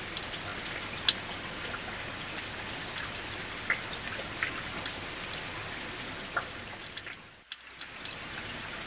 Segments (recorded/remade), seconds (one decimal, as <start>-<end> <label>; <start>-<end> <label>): 0.0-8.9 recorded